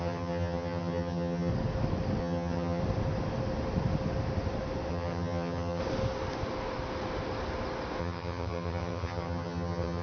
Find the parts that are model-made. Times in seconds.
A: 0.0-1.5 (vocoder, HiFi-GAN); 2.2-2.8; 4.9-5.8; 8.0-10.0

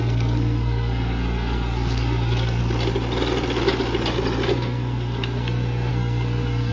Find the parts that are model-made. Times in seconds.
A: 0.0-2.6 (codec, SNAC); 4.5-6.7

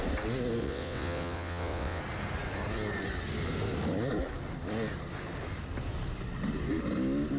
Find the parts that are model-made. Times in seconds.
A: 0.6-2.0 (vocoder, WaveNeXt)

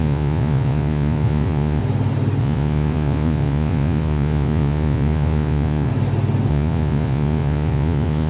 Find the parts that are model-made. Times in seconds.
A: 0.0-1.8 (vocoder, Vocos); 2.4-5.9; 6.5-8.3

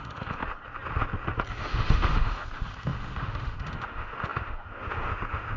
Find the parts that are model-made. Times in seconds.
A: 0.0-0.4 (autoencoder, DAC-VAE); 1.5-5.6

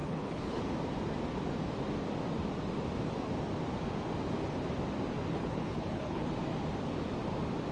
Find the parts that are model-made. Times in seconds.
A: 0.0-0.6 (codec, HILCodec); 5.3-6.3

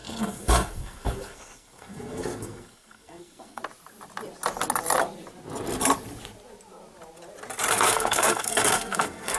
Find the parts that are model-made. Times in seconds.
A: 0.0-3.6 (codec, SNAC); 7.7-9.4

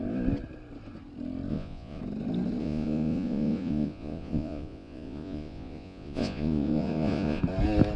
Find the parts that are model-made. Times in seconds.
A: 1.5-2.0 (vocoder, Vocos); 2.6-7.4